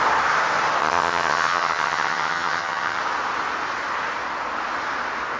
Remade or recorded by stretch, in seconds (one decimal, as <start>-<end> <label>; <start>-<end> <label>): 0.0-0.8 recorded; 0.8-3.0 remade; 3.0-5.4 recorded